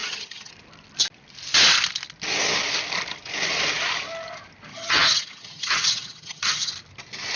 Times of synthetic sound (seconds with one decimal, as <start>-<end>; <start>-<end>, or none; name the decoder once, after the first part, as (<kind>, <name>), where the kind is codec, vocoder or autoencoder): 0.0-0.5 (vocoder, HiFi-GAN); 4.7-6.7